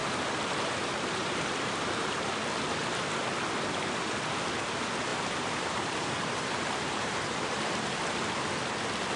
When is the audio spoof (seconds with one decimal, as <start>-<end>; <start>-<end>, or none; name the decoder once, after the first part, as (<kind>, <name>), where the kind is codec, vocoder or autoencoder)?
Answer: 0.0-2.3 (vocoder, BigVGAN v2); 5.1-7.1